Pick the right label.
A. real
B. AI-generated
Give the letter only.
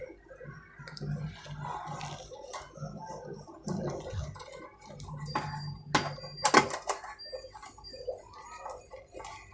A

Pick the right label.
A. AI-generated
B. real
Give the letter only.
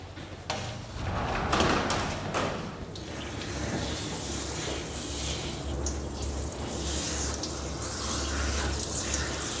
B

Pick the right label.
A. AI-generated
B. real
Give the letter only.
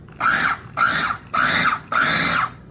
B